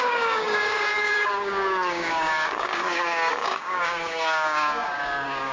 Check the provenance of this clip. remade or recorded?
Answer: remade